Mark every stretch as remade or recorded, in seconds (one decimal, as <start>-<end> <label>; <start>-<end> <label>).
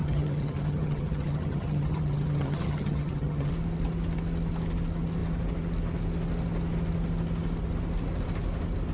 0.0-3.5 remade; 3.5-8.9 recorded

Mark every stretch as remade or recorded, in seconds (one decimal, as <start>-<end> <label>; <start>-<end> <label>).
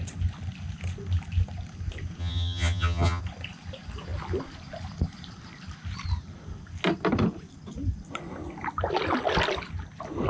0.0-2.2 recorded; 2.2-3.2 remade; 3.2-10.3 recorded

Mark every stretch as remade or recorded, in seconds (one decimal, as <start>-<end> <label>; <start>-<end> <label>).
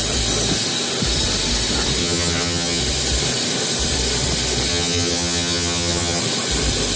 0.0-2.0 recorded; 2.0-2.8 remade; 2.8-4.7 recorded; 4.7-6.2 remade; 6.2-7.0 recorded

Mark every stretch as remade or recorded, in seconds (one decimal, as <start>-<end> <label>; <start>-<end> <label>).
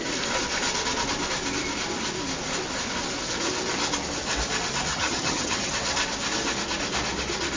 0.0-4.9 recorded; 4.9-5.7 remade; 5.7-7.6 recorded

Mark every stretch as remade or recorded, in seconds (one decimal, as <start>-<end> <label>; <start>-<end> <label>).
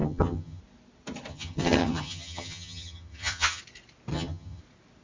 0.0-0.6 remade; 0.6-1.3 recorded; 1.3-3.6 remade; 3.6-4.1 recorded; 4.1-4.6 remade; 4.6-5.0 recorded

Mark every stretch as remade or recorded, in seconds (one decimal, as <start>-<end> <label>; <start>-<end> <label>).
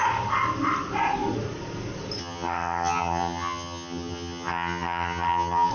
0.0-2.2 recorded; 2.2-5.7 remade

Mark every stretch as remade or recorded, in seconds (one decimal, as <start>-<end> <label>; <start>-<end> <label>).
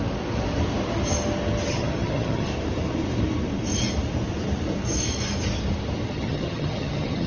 0.0-1.7 recorded; 1.7-2.5 remade; 2.5-6.1 recorded; 6.1-7.3 remade